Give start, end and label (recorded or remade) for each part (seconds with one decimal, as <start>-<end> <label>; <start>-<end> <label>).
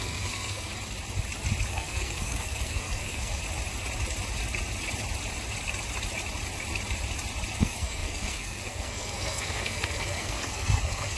0.0-0.7 remade; 0.7-1.7 recorded; 1.7-3.4 remade; 3.4-7.6 recorded; 7.6-11.2 remade